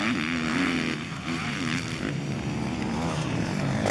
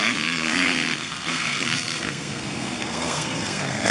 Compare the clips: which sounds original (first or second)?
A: first